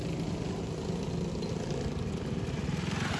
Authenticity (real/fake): fake